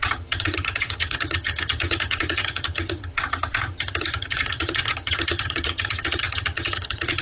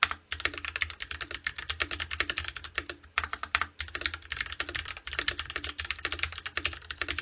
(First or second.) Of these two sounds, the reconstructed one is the first